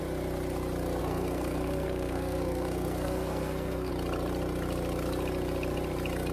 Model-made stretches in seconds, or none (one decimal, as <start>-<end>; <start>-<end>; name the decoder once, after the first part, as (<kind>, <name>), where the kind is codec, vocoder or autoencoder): 1.0-3.9 (codec, SNAC)